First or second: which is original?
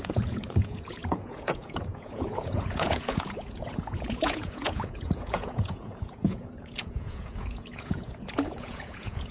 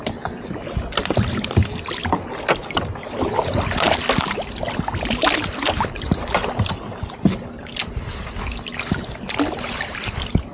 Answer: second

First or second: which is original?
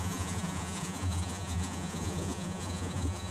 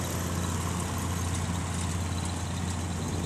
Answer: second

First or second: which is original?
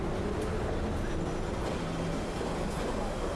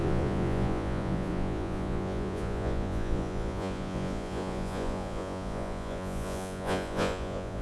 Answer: first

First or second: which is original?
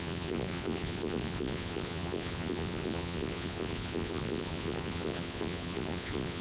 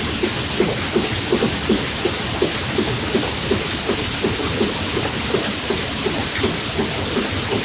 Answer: second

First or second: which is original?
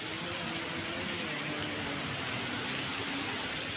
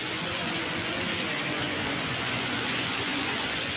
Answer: first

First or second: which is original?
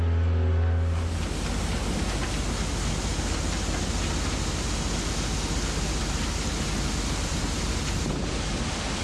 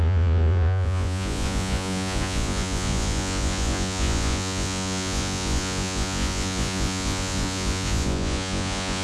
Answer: first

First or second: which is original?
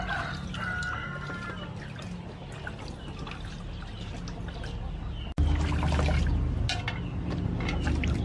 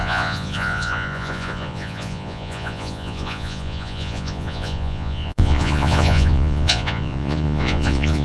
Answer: first